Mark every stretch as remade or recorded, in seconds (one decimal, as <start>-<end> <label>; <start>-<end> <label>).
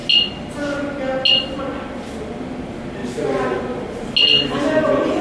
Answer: 0.0-5.2 recorded